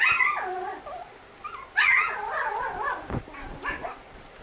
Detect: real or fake real